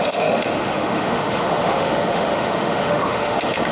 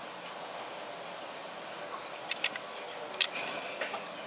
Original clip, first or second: second